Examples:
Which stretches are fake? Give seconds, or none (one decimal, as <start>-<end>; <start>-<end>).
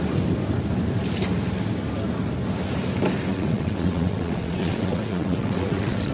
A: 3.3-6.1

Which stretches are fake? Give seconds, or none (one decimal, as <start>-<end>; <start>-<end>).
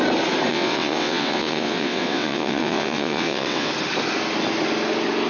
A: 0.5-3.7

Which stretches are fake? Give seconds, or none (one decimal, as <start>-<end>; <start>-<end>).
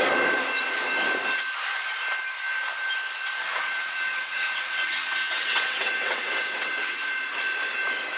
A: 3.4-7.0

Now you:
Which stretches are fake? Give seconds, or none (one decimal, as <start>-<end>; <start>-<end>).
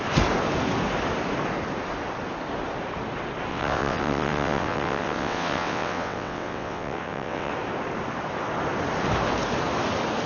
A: 3.5-7.5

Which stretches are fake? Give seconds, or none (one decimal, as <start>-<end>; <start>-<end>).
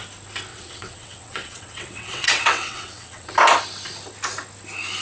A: 0.5-3.3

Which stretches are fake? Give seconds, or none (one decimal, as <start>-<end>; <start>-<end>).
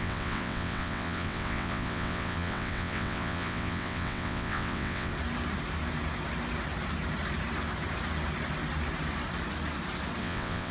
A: 0.0-5.1; 10.2-10.7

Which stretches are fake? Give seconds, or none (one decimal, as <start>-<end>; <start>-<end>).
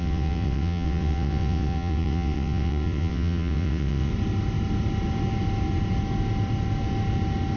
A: 0.0-4.1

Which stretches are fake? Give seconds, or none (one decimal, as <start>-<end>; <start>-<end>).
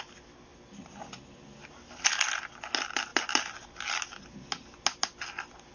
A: none